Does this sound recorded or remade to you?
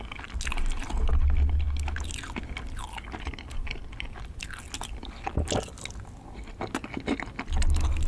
recorded